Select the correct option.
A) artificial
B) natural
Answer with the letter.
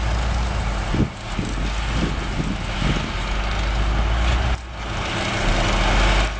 B